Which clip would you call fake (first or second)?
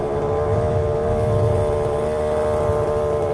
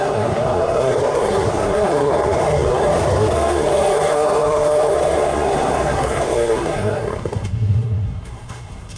second